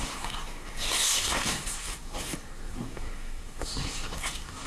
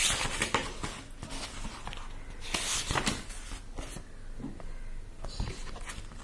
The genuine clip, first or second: second